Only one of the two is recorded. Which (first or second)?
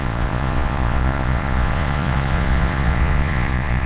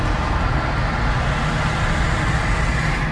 second